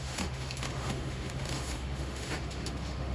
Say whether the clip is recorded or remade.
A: remade